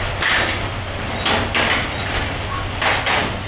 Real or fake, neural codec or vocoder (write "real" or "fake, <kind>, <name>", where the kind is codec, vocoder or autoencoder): real